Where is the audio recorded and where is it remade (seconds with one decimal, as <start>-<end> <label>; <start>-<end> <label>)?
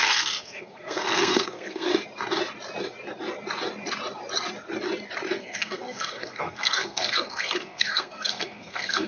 0.0-1.9 remade; 1.9-5.4 recorded; 5.4-9.1 remade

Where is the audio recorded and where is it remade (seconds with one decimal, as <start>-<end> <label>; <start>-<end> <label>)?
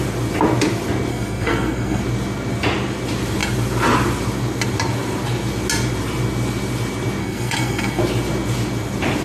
0.0-1.1 recorded; 1.1-2.0 remade; 2.0-7.2 recorded; 7.2-8.0 remade; 8.0-9.2 recorded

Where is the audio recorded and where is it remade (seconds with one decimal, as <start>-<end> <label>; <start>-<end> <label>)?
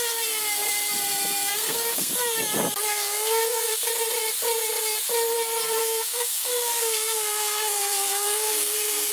0.0-1.5 recorded; 1.5-2.1 remade; 2.1-2.9 recorded; 2.9-3.9 remade; 3.9-5.8 recorded; 5.8-9.1 remade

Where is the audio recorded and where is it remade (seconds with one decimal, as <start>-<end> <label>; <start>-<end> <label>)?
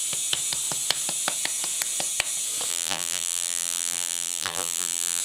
0.0-2.7 recorded; 2.7-5.2 remade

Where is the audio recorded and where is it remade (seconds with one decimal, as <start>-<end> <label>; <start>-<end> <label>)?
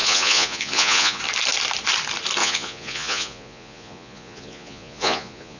0.0-1.2 remade; 1.2-2.4 recorded; 2.4-5.6 remade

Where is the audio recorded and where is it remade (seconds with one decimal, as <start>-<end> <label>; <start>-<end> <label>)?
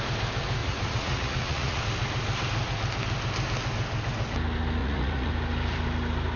0.0-0.6 recorded; 0.6-1.8 remade; 1.8-4.8 recorded; 4.8-5.3 remade; 5.3-6.4 recorded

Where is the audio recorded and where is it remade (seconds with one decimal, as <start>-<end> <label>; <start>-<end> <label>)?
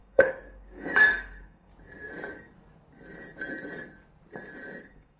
0.0-1.7 remade; 1.7-4.8 recorded; 4.8-5.2 remade